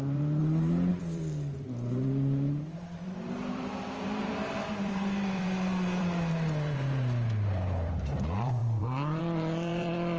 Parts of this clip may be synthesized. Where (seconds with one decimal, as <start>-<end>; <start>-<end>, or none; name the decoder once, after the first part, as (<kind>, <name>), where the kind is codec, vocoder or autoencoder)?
0.0-10.2 (vocoder, BigVGAN v2)